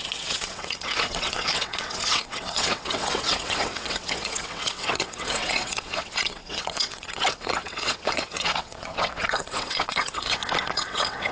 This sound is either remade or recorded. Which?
remade